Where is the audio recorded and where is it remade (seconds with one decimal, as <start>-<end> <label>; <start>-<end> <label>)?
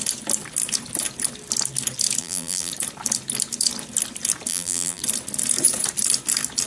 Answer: 0.0-2.2 recorded; 2.2-2.7 remade; 2.7-4.5 recorded; 4.5-5.0 remade; 5.0-6.7 recorded